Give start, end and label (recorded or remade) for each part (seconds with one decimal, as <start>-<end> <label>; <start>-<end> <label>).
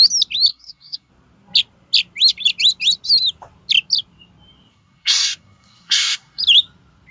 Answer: 0.0-0.5 recorded; 0.5-1.1 remade; 1.1-4.7 recorded; 4.7-6.4 remade; 6.4-7.1 recorded